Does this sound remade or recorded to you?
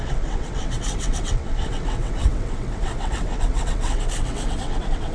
remade